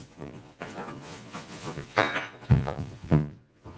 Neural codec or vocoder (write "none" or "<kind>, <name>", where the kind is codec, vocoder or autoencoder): vocoder, Vocos